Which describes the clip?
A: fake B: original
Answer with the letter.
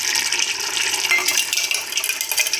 B